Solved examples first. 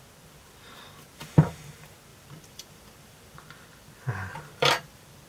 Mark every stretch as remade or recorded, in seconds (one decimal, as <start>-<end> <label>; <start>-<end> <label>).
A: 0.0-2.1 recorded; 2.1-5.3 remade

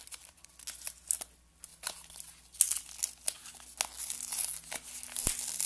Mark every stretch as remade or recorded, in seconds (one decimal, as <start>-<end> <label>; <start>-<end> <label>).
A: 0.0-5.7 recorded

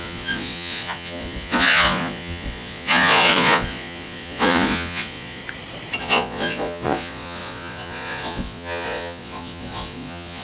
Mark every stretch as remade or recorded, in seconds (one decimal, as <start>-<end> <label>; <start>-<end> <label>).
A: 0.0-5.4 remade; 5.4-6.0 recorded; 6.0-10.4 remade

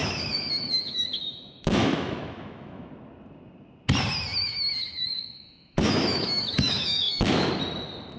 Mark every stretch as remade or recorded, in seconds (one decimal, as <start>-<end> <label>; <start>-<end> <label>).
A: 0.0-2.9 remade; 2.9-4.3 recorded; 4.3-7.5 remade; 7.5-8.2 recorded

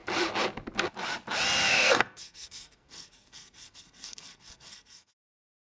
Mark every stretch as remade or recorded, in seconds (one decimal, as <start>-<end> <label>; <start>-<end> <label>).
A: 0.0-1.7 recorded; 1.7-5.1 remade; 5.1-5.6 recorded

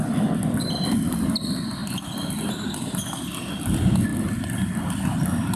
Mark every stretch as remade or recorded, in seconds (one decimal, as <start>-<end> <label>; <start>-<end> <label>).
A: 0.0-5.6 recorded

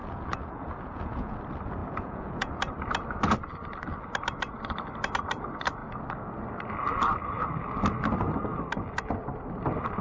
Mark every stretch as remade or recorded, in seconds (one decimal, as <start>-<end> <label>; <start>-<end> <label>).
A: 0.0-1.4 remade; 1.4-1.8 recorded; 1.8-2.5 remade; 2.5-10.0 recorded

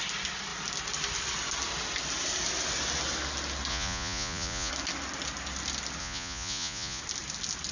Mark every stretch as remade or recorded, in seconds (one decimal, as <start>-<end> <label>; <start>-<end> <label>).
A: 0.0-3.7 recorded; 3.7-4.7 remade; 4.7-6.0 recorded; 6.0-7.0 remade; 7.0-7.7 recorded